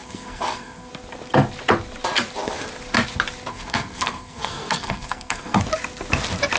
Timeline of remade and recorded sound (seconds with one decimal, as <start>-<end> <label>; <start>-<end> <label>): 0.0-0.9 remade; 0.9-3.5 recorded; 3.5-5.6 remade; 5.6-6.6 recorded